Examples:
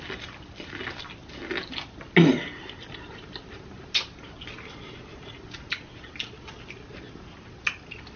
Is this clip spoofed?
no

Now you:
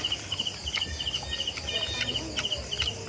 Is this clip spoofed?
no